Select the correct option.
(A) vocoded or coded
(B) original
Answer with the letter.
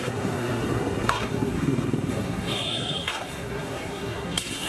A